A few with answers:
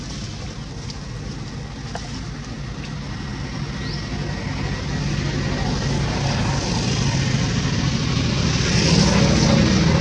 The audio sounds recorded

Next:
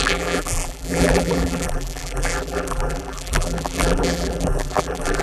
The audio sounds remade